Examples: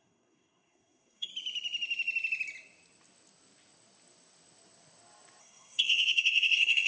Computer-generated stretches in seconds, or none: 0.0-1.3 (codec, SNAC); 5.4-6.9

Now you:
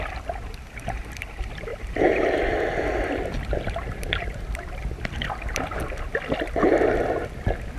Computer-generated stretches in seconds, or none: 1.7-6.1 (vocoder, BigVGAN v2)